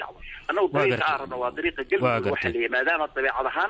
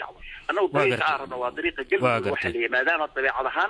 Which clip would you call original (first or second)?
first